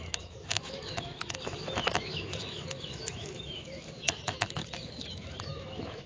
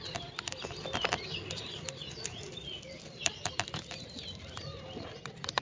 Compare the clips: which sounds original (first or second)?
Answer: second